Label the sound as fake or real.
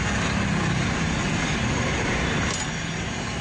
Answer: real